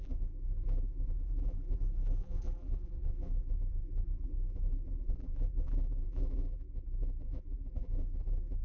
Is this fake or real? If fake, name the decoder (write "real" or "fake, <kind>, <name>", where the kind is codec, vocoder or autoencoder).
fake, vocoder, BigVGAN v2